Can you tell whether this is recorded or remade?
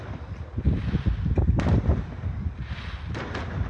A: recorded